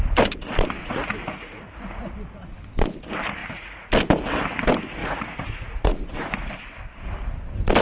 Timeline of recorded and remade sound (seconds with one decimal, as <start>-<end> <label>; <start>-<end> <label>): 0.0-0.8 recorded; 0.8-2.1 remade; 2.1-3.4 recorded; 3.4-3.9 remade; 3.9-5.0 recorded; 5.0-6.5 remade; 6.5-7.8 recorded